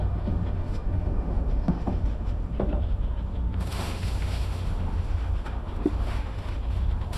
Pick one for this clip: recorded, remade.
remade